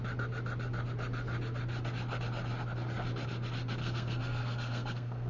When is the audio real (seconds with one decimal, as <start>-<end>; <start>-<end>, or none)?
0.0-3.8